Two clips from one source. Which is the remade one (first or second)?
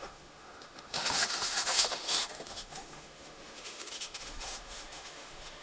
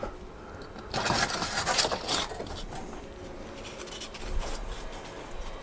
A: first